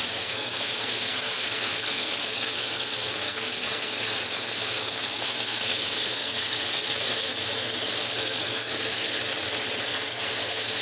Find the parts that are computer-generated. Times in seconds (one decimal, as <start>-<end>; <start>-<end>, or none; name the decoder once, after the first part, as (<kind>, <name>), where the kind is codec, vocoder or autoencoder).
0.0-9.2 (codec, SNAC); 9.8-10.8